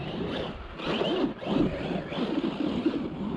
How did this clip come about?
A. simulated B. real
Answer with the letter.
B